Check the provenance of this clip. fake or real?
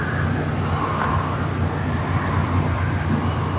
real